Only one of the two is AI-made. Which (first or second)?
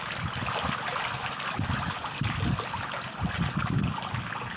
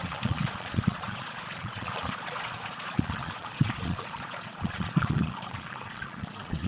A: second